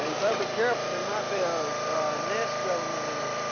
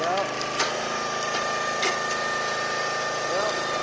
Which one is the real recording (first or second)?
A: second